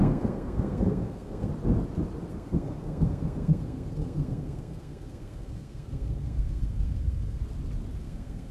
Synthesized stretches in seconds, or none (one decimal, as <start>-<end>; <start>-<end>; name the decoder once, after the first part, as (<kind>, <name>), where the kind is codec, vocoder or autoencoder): 0.0-1.5 (codec, SNAC); 2.3-7.4; 8.0-8.5